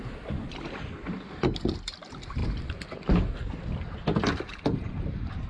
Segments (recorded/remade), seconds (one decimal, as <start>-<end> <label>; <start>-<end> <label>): 0.0-5.5 recorded